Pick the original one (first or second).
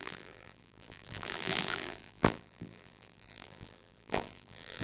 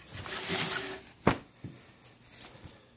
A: second